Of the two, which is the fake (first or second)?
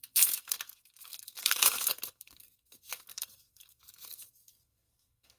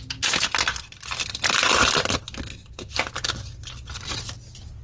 first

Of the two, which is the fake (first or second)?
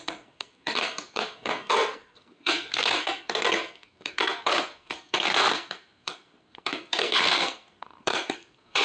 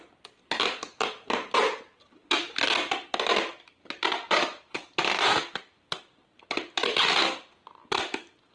first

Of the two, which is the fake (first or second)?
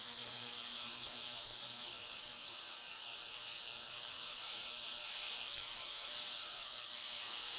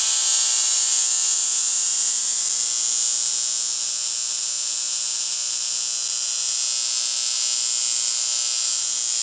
first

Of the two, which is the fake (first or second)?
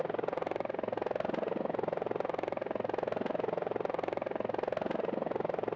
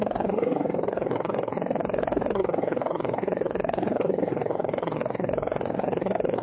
second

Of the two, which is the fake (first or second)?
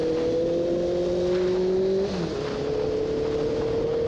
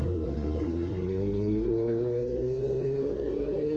second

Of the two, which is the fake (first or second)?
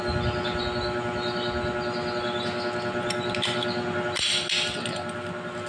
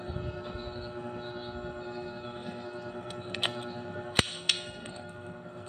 second